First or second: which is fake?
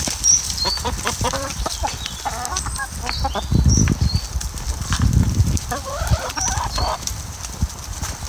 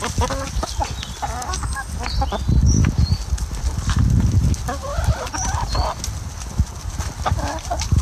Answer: first